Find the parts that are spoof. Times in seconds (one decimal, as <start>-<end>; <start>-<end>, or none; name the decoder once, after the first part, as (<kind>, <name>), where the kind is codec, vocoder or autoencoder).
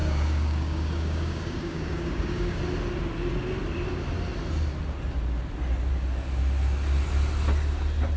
0.0-2.6 (codec, DAC)